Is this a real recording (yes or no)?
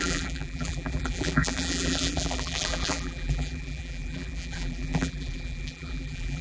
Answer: no